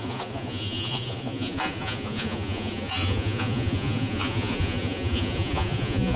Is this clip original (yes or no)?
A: no